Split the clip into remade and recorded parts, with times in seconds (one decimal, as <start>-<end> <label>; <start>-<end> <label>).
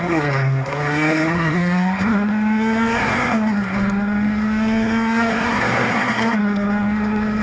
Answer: 0.0-7.4 remade